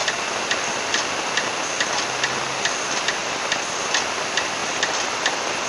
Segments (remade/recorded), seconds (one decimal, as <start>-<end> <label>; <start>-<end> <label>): 0.0-3.2 recorded; 3.2-3.8 remade; 3.8-4.6 recorded; 4.6-5.7 remade